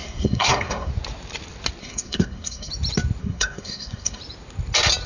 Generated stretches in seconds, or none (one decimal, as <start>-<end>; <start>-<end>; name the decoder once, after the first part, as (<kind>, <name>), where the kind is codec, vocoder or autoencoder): 0.0-0.9 (codec, SNAC); 1.8-2.7; 3.2-4.2